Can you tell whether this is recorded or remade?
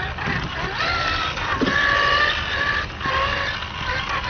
recorded